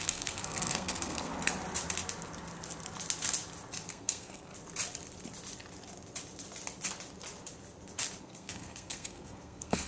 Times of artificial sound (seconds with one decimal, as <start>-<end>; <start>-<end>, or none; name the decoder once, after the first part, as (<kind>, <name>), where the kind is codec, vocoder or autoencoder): 0.0-1.3 (codec, SNAC); 3.9-4.5; 8.2-9.9